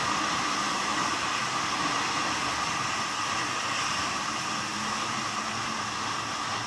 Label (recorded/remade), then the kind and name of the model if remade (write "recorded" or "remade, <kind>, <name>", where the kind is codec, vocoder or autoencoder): recorded